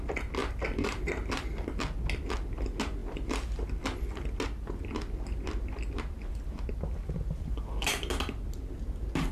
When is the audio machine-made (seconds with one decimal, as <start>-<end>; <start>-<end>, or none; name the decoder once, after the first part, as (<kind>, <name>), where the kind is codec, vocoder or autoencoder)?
0.4-1.0 (vocoder, BigVGAN v2)